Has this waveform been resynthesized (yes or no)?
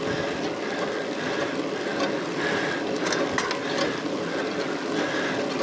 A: no